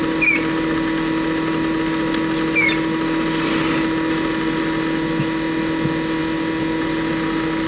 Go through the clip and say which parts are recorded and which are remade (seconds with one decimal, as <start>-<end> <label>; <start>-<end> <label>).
0.0-7.7 recorded